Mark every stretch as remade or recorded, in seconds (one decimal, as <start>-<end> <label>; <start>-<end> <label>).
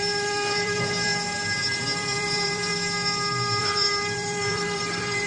0.0-1.1 remade; 1.1-1.6 recorded; 1.6-2.7 remade; 2.7-3.6 recorded; 3.6-5.3 remade